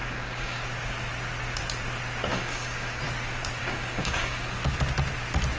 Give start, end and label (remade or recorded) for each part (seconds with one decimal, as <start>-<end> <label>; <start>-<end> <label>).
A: 0.0-0.6 remade; 0.6-2.3 recorded; 2.3-3.0 remade; 3.0-3.6 recorded; 3.6-4.5 remade; 4.5-5.6 recorded